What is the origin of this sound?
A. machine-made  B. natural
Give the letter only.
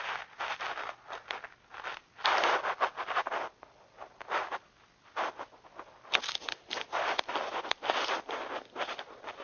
B